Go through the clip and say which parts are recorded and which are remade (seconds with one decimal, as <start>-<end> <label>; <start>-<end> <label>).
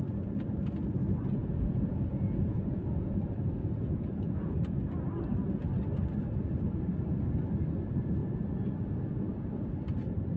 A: 0.0-1.4 recorded; 1.4-4.8 remade; 4.8-8.2 recorded; 8.2-9.5 remade; 9.5-10.4 recorded